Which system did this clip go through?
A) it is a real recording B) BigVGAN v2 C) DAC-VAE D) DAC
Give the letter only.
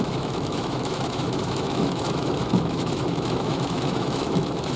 C